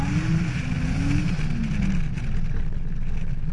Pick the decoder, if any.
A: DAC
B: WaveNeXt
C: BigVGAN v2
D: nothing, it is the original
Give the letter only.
D